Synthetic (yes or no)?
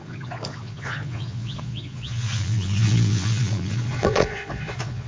yes